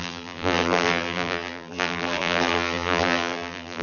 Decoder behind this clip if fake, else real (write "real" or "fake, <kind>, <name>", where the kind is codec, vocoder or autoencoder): fake, vocoder, BigVGAN v2